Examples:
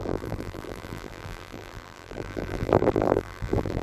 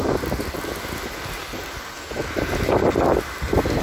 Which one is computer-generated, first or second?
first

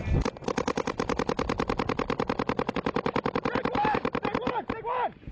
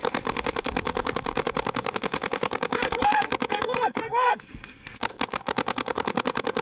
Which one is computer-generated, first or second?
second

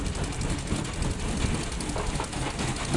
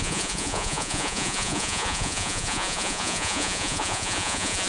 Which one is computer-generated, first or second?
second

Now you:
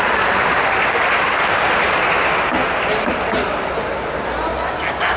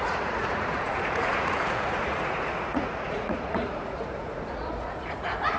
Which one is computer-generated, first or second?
second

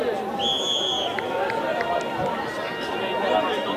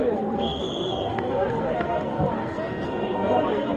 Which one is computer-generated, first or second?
second